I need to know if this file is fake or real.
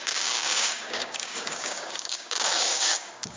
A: fake